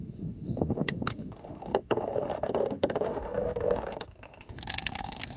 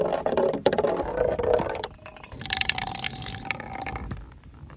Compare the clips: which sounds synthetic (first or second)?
first